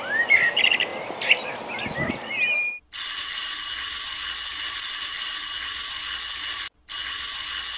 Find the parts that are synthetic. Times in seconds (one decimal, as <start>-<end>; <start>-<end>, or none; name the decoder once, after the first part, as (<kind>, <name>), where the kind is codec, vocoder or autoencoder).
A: none